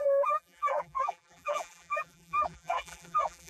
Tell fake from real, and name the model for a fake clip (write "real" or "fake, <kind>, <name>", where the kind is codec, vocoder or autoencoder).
fake, vocoder, BigVGAN v2